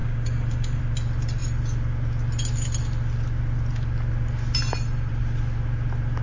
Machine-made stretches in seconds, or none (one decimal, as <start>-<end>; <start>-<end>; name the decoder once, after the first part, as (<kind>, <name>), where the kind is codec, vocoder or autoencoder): 0.0-0.8 (codec, DAC)